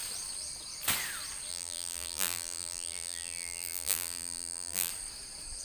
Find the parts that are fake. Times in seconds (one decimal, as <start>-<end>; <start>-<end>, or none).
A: 1.5-4.9